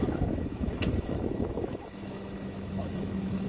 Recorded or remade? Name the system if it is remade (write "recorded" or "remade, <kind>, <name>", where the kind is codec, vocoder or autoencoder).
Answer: remade, autoencoder, DAC-VAE